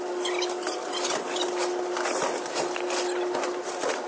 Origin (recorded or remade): recorded